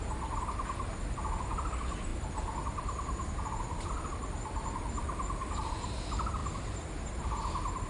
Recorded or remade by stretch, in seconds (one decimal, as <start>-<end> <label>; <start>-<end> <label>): 0.0-7.9 recorded

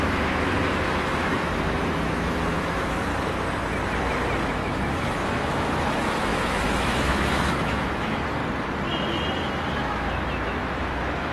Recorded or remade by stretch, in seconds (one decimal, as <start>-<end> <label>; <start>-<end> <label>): 0.0-3.1 remade; 3.1-4.5 recorded; 4.5-8.4 remade; 8.4-9.7 recorded; 9.7-11.3 remade

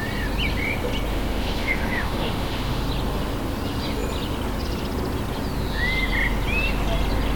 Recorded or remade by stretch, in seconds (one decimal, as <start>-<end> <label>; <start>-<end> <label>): 0.0-1.1 recorded; 1.1-2.8 remade; 2.8-7.4 recorded

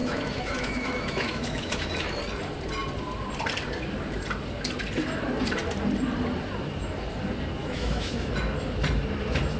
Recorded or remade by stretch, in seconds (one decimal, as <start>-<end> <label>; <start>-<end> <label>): 0.0-2.2 remade; 2.2-7.6 recorded; 7.6-8.3 remade; 8.3-9.6 recorded

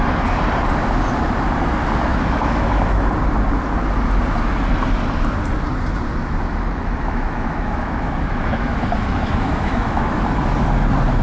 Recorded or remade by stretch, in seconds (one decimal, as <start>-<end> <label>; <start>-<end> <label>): 0.0-2.1 recorded; 2.1-3.0 remade; 3.0-6.2 recorded; 6.2-10.2 remade; 10.2-11.2 recorded

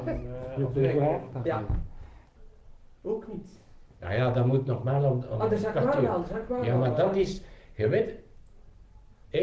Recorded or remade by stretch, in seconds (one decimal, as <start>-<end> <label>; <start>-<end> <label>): 0.0-0.8 recorded; 0.8-1.6 remade; 1.6-3.5 recorded; 3.5-4.9 remade; 4.9-9.4 recorded

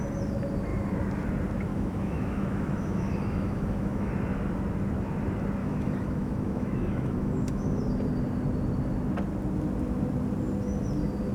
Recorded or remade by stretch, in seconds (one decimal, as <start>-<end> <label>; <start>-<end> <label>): 0.0-1.7 recorded; 1.7-4.1 remade; 4.1-5.6 recorded; 5.6-7.8 remade; 7.8-11.3 recorded

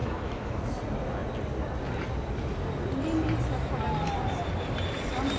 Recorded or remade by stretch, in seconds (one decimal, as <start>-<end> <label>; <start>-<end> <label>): 0.0-0.6 remade; 0.6-5.4 recorded